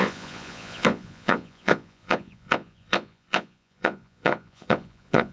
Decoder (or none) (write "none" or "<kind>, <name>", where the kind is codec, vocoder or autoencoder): vocoder, Vocos